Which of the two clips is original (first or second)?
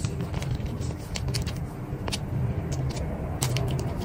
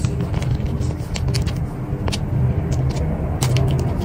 second